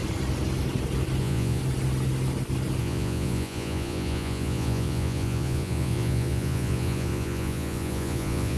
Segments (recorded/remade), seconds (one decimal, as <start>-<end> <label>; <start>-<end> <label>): 0.0-1.2 recorded; 1.2-1.6 remade; 1.6-2.8 recorded; 2.8-8.6 remade

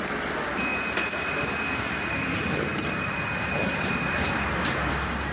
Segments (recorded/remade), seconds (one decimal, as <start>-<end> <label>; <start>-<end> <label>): 0.0-2.7 recorded; 2.7-5.3 remade

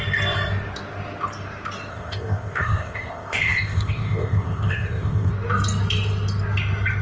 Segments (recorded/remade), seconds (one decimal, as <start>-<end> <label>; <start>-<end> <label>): 0.0-1.9 recorded; 1.9-5.3 remade; 5.3-7.0 recorded

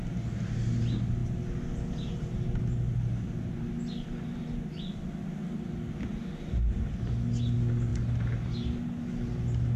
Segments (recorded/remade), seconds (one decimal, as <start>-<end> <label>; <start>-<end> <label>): 0.0-9.8 recorded

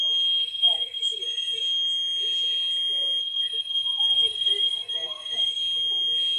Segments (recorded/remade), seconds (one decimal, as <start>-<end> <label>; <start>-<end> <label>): 0.0-0.4 recorded; 0.4-1.6 remade; 1.6-3.2 recorded; 3.2-5.6 remade; 5.6-6.4 recorded